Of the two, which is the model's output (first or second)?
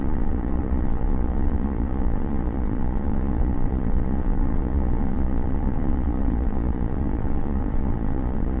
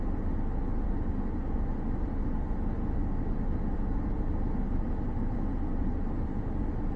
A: first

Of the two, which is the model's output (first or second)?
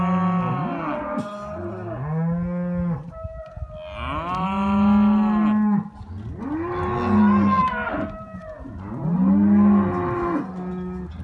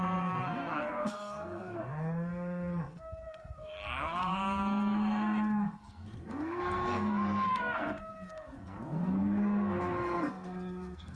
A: second